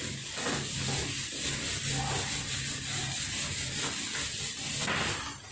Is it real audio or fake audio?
real